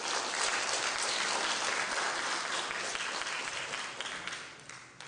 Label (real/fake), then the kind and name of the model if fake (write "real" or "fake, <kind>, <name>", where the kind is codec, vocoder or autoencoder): real